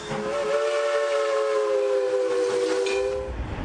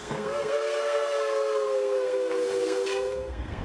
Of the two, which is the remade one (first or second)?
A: second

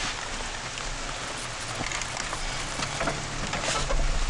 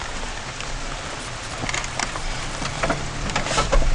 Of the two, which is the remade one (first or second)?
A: second